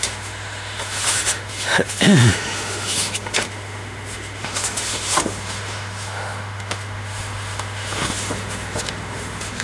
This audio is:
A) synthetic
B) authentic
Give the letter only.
A